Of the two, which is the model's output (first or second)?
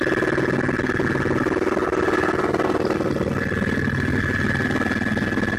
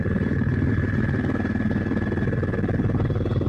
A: second